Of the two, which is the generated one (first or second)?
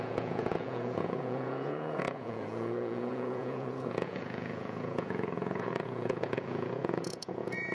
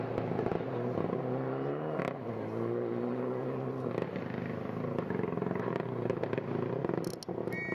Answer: first